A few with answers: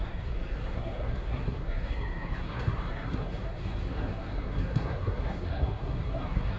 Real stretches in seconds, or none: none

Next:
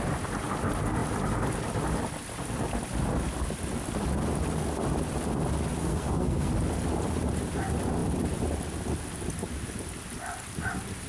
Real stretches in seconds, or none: 0.0-5.8; 6.5-11.1

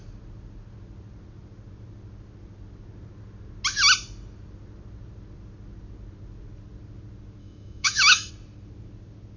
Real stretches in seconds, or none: 0.0-7.4; 8.3-9.4